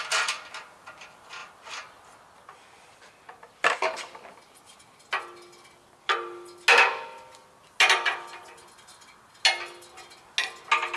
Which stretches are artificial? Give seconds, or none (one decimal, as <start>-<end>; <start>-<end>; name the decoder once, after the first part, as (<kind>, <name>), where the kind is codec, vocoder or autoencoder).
none

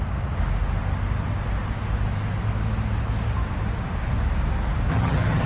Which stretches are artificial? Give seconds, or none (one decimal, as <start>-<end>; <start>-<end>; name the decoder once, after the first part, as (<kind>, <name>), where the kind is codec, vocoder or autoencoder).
4.9-5.5 (vocoder, HiFi-GAN)

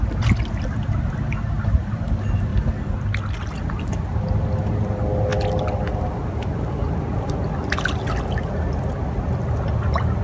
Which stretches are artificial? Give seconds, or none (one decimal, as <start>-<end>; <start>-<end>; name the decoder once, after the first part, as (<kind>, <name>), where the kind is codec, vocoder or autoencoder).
none